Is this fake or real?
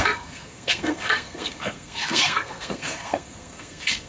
fake